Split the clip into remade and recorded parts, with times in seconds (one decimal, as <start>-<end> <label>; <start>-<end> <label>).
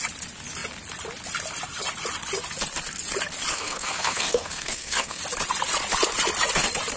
0.0-3.5 recorded; 3.5-5.2 remade; 5.2-7.0 recorded